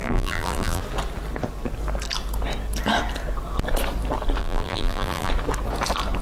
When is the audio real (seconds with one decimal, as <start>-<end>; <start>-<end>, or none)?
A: 0.8-4.4; 5.3-6.2